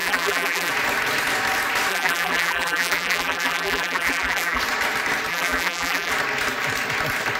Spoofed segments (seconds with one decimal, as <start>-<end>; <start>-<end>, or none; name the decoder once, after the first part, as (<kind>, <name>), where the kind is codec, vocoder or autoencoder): 0.0-0.7 (vocoder, BigVGAN v2); 1.9-4.6; 5.3-6.1

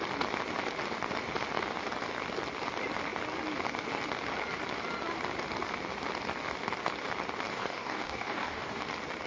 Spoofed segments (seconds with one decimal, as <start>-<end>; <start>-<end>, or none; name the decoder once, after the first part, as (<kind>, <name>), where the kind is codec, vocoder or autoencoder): 7.5-8.8 (codec, DAC)

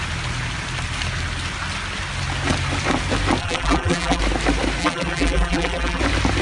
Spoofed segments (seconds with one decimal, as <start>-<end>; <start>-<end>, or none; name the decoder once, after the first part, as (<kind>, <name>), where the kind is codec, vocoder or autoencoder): 3.4-4.2 (vocoder, BigVGAN v2); 4.8-6.0

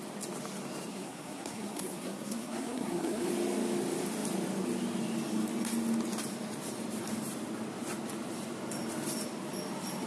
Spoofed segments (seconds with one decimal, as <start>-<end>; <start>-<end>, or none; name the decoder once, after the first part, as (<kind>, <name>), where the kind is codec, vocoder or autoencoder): 0.9-3.3 (codec, SNAC)

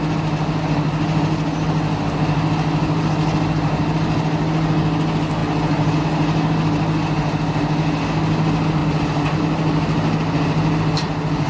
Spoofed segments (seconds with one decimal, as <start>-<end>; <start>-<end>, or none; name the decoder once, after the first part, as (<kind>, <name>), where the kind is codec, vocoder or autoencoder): none

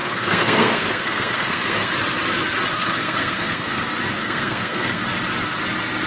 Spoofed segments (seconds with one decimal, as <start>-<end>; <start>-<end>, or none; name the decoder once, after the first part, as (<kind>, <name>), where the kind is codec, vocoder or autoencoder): 0.0-1.9 (codec, SNAC); 2.7-3.8; 4.2-5.0

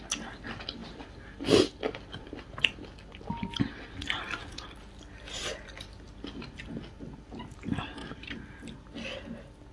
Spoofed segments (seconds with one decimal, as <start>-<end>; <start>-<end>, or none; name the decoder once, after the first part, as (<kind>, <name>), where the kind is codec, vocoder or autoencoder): 4.4-6.6 (vocoder, BigVGAN v2); 8.0-9.7